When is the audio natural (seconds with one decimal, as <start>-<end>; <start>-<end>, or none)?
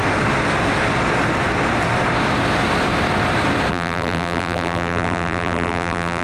0.0-3.7